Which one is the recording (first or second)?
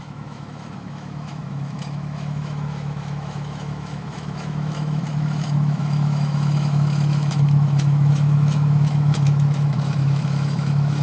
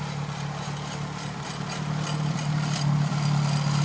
second